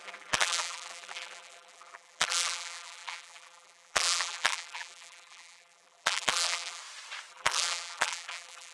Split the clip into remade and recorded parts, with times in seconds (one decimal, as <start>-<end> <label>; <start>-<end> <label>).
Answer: 0.0-6.8 remade; 6.8-7.3 recorded; 7.3-8.7 remade